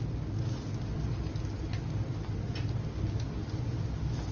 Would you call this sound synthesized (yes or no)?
no